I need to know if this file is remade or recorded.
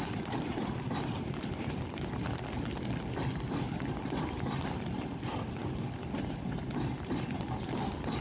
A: recorded